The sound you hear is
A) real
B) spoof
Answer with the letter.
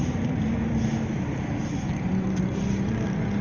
A